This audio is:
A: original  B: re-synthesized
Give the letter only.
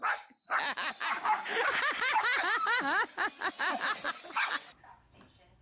A